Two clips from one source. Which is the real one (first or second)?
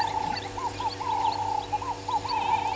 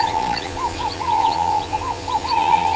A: first